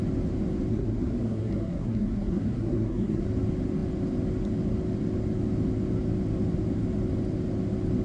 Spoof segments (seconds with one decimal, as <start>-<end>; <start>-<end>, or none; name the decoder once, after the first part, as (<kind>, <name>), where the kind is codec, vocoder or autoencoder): 0.7-3.2 (codec, SNAC)